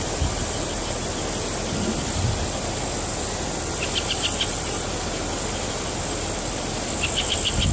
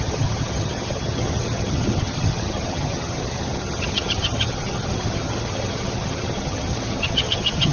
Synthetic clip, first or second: second